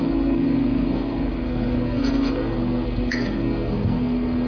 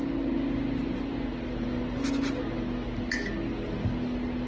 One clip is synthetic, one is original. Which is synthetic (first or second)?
first